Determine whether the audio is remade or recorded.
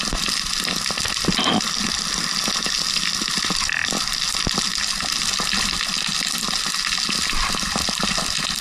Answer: recorded